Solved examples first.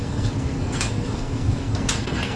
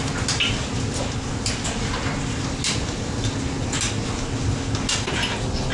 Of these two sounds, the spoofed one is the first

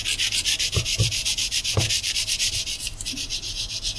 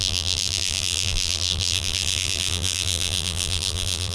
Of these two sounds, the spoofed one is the second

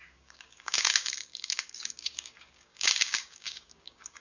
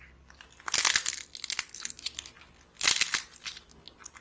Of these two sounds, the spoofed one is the first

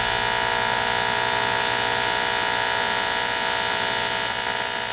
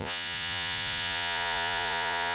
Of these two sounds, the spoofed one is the second